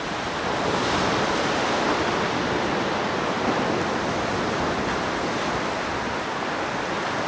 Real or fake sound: real